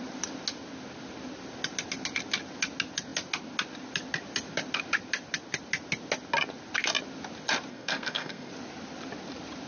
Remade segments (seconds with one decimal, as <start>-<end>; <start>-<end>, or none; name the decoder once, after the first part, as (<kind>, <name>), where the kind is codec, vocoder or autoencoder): 7.7-8.5 (codec, SNAC)